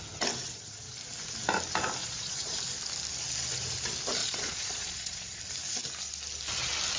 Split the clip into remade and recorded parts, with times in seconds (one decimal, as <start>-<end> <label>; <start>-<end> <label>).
0.0-2.0 recorded; 2.0-2.6 remade; 2.6-4.2 recorded; 4.2-5.4 remade; 5.4-7.0 recorded